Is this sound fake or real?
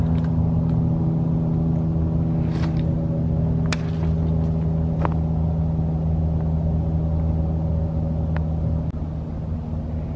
real